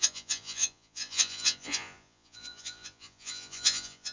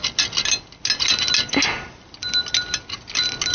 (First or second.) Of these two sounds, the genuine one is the second